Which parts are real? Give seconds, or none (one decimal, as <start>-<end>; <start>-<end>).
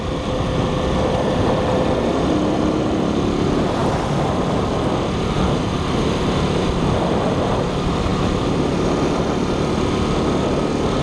0.0-11.0